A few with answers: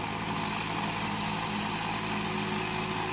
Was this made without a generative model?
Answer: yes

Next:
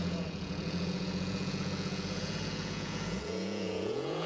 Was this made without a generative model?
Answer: no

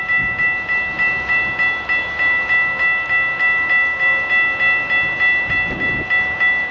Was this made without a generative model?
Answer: yes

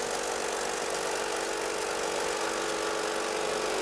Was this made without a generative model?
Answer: yes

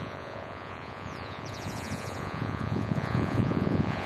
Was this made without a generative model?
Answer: no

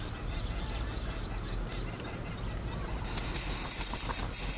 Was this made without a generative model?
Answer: yes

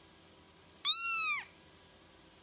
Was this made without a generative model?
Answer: yes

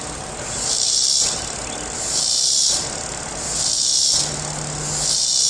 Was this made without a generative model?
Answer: yes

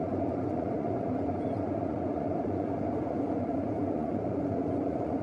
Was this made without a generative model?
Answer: no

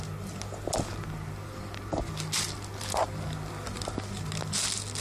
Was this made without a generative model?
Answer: yes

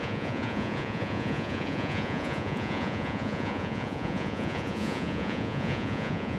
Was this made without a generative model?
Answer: no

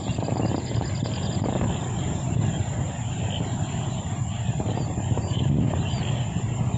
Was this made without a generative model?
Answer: yes